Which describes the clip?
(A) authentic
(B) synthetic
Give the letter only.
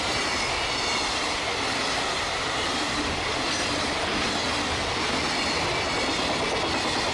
A